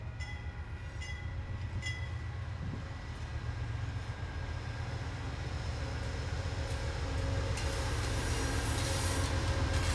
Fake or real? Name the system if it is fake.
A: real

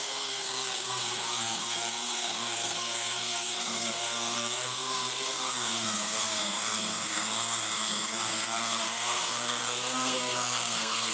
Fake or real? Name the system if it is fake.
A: fake, codec, SNAC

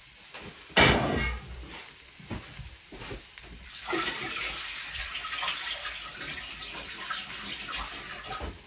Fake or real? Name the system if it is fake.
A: real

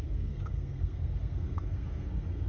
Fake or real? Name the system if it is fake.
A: fake, codec, SNAC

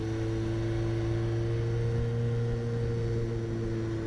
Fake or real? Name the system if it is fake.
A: real